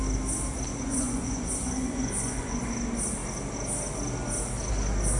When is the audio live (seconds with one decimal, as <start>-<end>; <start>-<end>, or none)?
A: 0.0-0.7; 2.6-5.2